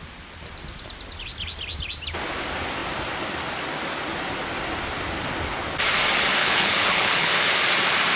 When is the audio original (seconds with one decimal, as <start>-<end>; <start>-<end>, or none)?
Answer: 0.0-6.4; 7.3-8.2